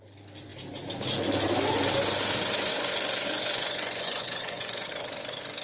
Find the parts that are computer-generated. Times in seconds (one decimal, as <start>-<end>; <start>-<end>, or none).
2.7-4.9